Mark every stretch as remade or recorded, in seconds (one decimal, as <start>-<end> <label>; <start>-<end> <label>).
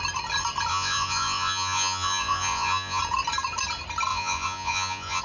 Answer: 0.0-0.7 recorded; 0.7-3.0 remade; 3.0-4.1 recorded; 4.1-5.2 remade